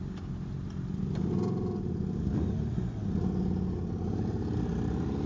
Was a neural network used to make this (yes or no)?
no